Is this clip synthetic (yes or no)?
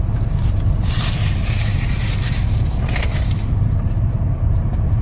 yes